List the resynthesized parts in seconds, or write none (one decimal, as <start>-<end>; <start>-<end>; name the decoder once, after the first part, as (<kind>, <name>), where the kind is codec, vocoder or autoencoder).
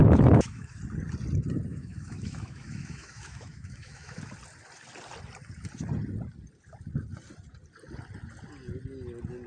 0.0-0.8 (autoencoder, DAC-VAE); 1.7-4.3